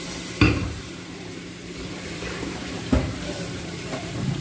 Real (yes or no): no